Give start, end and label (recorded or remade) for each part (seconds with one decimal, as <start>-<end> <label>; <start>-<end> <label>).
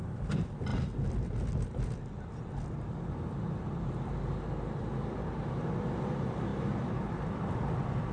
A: 0.0-8.1 recorded